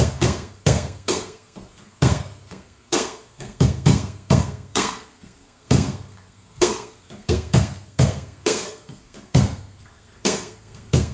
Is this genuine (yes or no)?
no